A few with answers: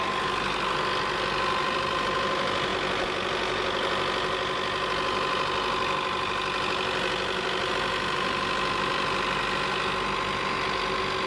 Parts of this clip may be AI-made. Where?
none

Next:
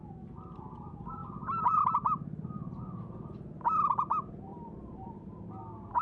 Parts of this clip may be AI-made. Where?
4.5-5.1 (vocoder, BigVGAN v2)

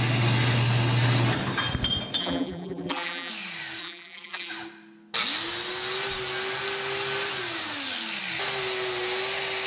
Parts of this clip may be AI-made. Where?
2.2-3.3 (vocoder, BigVGAN v2); 3.8-4.5